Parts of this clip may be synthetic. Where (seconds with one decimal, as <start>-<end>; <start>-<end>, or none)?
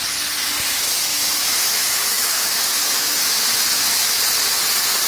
1.1-4.2